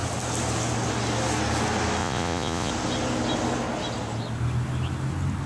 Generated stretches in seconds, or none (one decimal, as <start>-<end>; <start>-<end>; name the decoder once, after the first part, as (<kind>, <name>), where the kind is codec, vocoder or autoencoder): 2.0-2.7 (vocoder, Vocos)

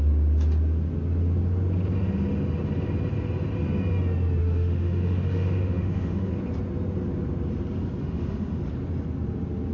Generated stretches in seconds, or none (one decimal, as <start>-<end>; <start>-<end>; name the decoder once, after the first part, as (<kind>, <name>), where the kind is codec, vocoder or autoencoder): 4.4-6.3 (autoencoder, DAC-VAE); 8.0-8.6